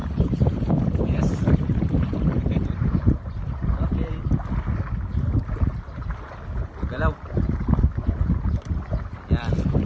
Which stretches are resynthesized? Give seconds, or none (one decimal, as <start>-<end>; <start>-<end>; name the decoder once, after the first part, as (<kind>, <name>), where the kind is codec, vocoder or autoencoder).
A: 0.0-4.1 (vocoder, BigVGAN v2)